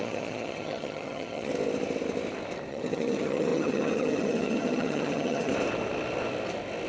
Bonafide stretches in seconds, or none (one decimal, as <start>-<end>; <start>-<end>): 1.5-2.7; 5.5-6.9